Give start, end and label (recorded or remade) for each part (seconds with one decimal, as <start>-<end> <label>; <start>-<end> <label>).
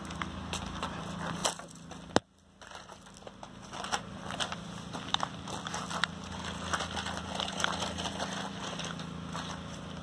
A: 0.0-10.0 recorded